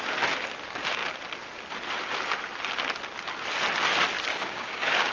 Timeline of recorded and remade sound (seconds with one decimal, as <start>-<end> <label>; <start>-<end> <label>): 0.0-4.3 recorded; 4.3-5.1 remade